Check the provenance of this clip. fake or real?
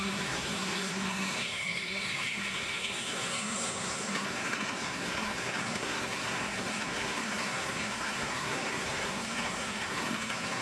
fake